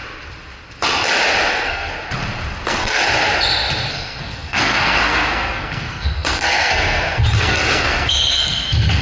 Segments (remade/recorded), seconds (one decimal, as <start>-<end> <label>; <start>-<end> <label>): 0.0-1.5 recorded; 1.5-1.9 remade; 1.9-2.6 recorded; 2.6-3.0 remade; 3.0-3.9 recorded; 3.9-9.0 remade